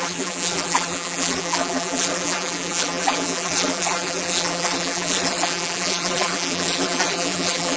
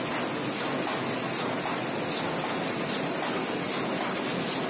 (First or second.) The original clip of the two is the second